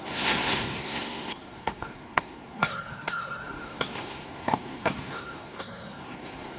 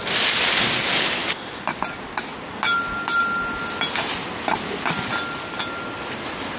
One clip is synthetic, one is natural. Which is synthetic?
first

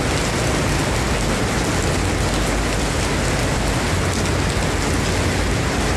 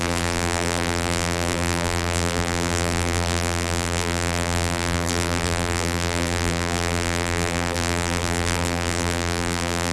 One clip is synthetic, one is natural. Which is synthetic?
second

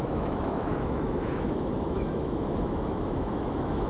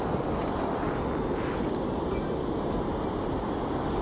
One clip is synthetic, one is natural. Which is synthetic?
first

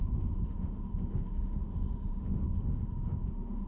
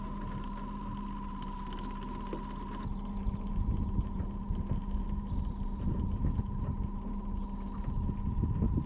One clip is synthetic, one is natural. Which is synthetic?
first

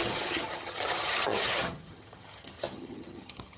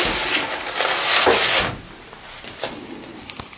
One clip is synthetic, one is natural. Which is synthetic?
first